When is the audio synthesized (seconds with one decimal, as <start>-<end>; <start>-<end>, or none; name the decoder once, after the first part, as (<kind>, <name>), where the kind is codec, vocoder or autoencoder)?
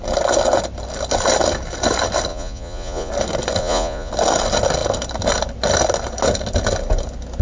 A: 2.3-3.1 (vocoder, Vocos); 3.6-4.1